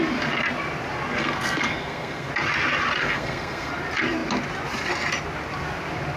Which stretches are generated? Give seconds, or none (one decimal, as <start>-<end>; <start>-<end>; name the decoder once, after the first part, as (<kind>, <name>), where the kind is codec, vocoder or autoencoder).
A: 1.2-2.3 (codec, SNAC); 3.0-3.7